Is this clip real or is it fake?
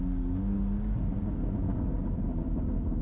real